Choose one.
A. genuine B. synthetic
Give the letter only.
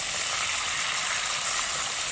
A